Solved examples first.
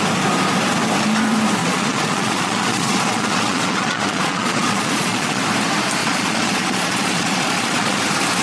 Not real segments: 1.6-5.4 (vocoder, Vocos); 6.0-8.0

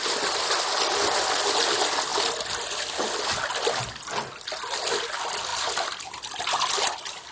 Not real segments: none

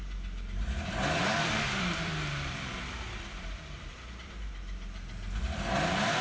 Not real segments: 1.2-4.3 (vocoder, BigVGAN v2)

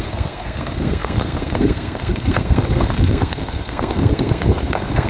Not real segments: 0.0-5.1 (codec, SNAC)